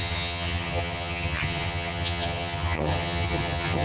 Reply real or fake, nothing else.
fake